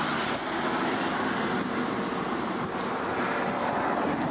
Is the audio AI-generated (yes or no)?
no